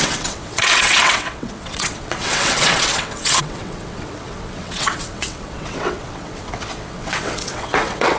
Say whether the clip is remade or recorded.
remade